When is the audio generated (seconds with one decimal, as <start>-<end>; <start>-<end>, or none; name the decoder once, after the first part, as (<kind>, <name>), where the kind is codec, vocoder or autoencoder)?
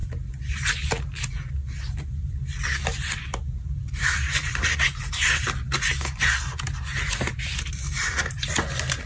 none